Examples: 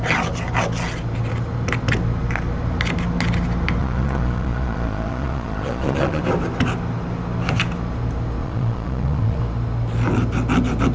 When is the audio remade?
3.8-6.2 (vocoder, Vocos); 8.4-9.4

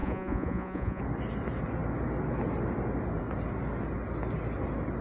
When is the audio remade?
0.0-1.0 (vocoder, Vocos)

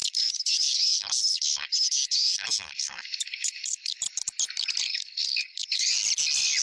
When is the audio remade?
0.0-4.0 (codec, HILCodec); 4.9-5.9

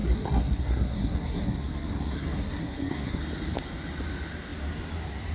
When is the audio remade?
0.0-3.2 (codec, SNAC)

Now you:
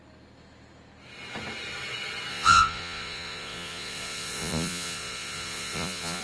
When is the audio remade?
2.3-6.2 (vocoder, Vocos)

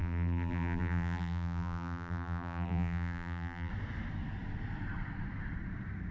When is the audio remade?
0.0-3.7 (vocoder, BigVGAN v2)

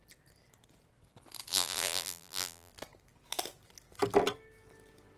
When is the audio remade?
1.5-2.7 (vocoder, BigVGAN v2)

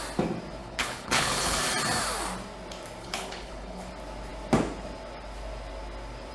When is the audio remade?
0.6-1.6 (codec, HILCodec); 3.0-3.9